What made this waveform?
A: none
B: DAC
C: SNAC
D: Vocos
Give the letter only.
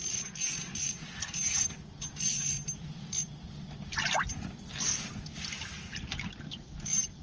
A